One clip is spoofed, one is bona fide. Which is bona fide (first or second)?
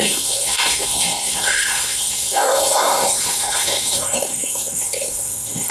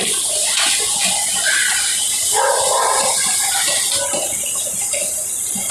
second